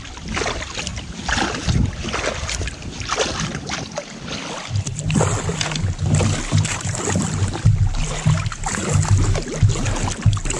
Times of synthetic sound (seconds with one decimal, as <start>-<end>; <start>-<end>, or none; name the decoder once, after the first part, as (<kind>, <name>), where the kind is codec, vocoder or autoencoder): 0.9-1.9 (vocoder, BigVGAN v2)